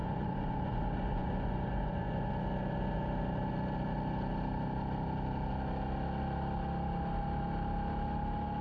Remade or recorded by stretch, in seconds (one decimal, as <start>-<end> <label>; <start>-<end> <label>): 0.0-2.3 remade; 2.3-8.6 recorded